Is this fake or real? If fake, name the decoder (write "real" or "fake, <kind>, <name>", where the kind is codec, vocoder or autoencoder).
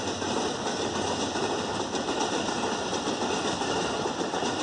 fake, vocoder, BigVGAN v2